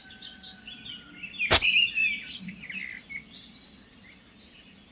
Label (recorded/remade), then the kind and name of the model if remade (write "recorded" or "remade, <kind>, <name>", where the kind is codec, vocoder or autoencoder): recorded